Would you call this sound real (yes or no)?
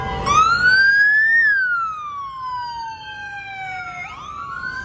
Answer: yes